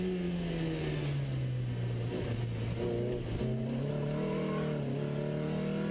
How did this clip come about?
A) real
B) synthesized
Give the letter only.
A